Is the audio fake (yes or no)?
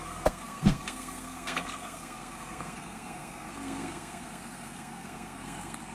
yes